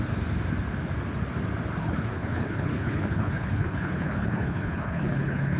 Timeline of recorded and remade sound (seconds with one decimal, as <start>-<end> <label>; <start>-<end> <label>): 0.0-1.8 recorded; 1.8-5.6 remade

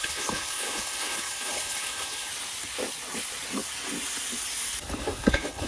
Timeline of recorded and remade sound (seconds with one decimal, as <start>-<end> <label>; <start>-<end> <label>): 0.0-2.3 remade; 2.3-5.2 recorded; 5.2-5.7 remade

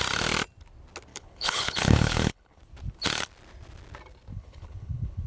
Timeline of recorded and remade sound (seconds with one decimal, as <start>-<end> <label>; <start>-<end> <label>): 0.0-1.1 recorded; 1.1-2.6 remade; 2.6-4.3 recorded; 4.3-5.3 remade

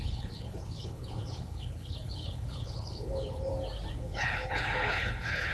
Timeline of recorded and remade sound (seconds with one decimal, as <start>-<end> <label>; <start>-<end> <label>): 0.0-3.5 remade; 3.5-4.0 recorded; 4.0-5.5 remade